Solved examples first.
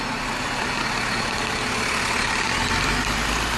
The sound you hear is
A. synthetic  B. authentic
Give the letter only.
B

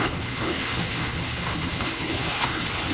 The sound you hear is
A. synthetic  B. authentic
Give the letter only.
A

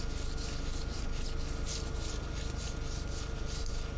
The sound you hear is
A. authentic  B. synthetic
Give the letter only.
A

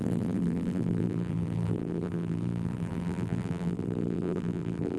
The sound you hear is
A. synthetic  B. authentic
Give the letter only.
A